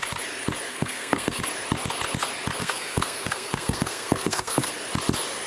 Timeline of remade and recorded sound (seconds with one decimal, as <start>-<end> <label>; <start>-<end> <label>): 0.0-0.7 recorded; 0.7-1.4 remade; 1.4-2.6 recorded; 2.6-4.7 remade; 4.7-5.5 recorded